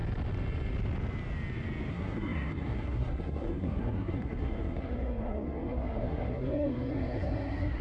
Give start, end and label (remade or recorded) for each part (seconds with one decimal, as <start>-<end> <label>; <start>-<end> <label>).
0.0-1.9 recorded; 1.9-7.8 remade